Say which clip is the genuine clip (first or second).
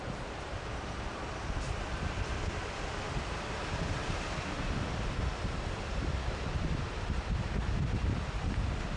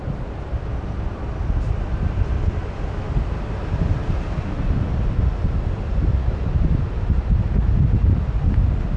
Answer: second